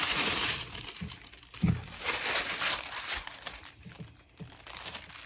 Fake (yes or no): yes